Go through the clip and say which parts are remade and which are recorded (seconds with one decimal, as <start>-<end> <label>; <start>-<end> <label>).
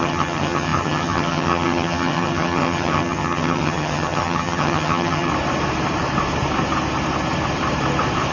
0.0-5.3 remade; 5.3-8.3 recorded